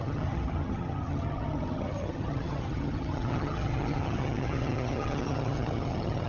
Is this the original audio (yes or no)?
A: no